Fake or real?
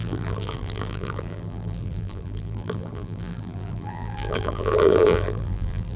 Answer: fake